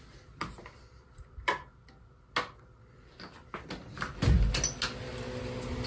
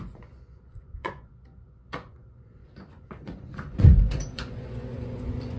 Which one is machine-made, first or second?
second